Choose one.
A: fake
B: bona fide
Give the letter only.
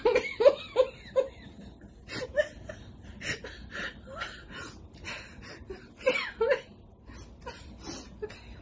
B